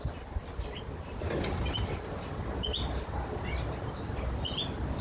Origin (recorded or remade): recorded